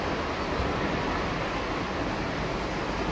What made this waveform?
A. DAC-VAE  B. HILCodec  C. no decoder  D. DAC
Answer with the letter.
C